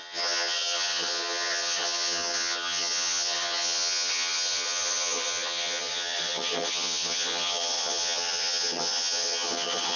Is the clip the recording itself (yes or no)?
no